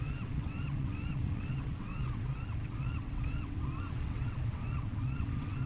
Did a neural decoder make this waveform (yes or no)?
yes